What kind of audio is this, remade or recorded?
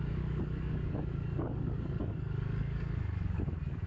remade